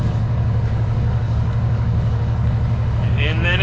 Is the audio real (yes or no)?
no